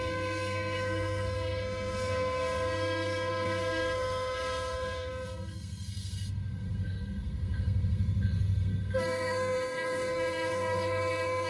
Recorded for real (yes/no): no